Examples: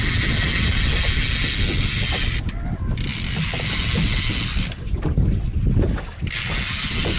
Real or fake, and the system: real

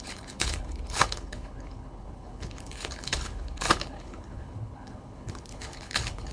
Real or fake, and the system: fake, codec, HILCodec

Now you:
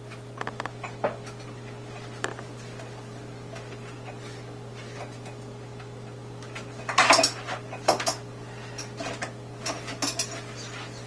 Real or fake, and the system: real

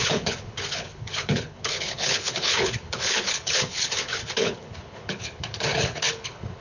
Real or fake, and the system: fake, codec, HILCodec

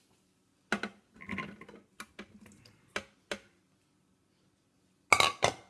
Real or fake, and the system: real